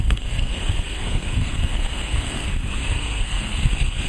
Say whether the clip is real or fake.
fake